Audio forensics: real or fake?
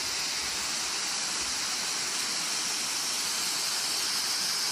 real